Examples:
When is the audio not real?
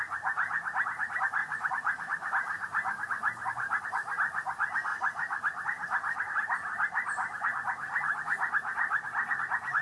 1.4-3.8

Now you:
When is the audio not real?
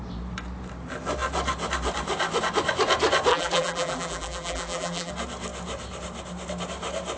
3.3-5.1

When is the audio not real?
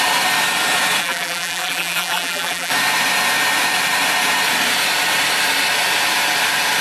1.0-2.7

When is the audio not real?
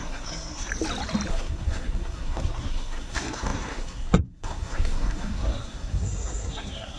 0.0-0.7; 1.3-7.0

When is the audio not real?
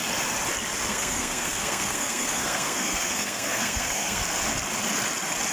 0.9-4.2